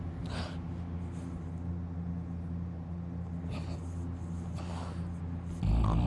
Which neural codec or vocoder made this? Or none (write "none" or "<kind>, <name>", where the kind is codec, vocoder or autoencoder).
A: none